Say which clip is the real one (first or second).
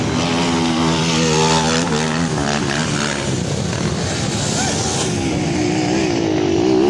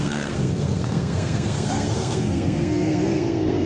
first